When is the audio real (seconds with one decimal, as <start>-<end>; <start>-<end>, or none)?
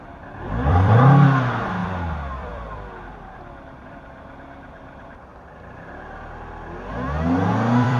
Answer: 5.3-7.5